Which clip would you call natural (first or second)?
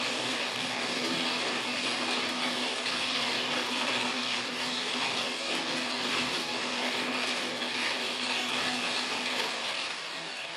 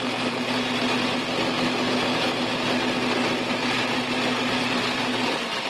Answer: second